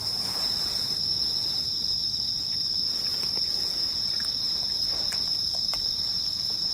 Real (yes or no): no